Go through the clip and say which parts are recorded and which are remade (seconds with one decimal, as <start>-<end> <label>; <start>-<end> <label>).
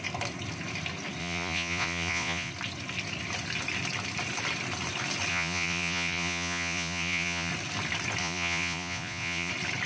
0.0-1.2 recorded; 1.2-2.5 remade; 2.5-5.3 recorded; 5.3-7.5 remade; 7.5-8.2 recorded; 8.2-9.5 remade; 9.5-9.9 recorded